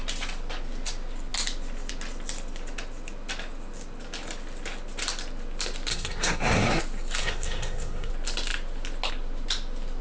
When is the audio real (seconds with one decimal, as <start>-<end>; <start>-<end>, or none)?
0.0-5.9; 6.8-7.2; 8.1-10.0